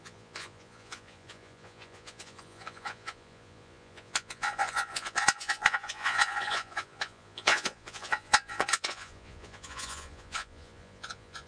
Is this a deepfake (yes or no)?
yes